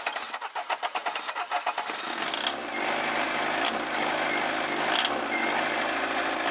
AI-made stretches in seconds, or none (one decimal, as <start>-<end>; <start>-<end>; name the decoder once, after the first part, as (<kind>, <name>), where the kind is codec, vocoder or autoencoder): none